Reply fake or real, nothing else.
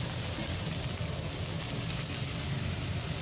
real